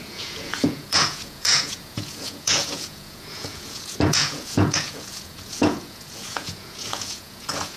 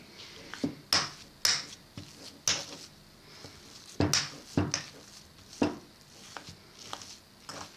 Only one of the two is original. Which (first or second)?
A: second